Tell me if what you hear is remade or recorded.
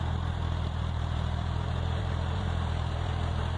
remade